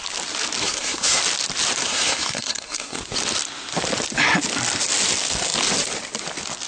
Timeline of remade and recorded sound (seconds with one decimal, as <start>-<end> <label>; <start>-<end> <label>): 0.0-0.6 recorded; 0.6-1.2 remade; 1.2-1.8 recorded; 1.8-3.0 remade; 3.0-6.7 recorded